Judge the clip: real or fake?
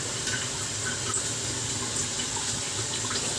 real